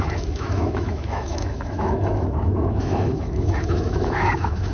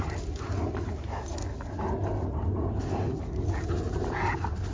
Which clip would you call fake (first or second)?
first